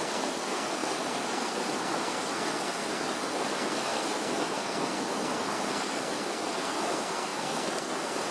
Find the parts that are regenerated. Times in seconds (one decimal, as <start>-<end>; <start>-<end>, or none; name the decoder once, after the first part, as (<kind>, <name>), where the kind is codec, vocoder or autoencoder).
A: 0.0-8.3 (codec, SNAC)